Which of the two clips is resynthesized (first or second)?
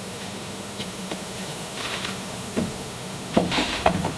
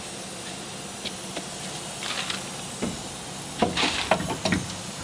first